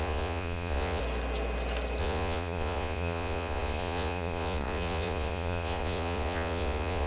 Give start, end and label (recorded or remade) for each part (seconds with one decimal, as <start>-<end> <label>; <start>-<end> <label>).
0.0-1.0 remade; 1.0-2.0 recorded; 2.0-7.1 remade